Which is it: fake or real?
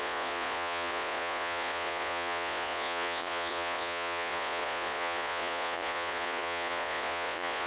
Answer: fake